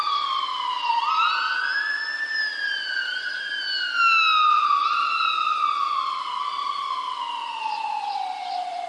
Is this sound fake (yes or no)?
no